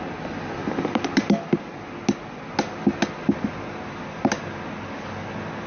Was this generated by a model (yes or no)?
no